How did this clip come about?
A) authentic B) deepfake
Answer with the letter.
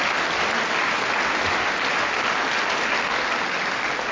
A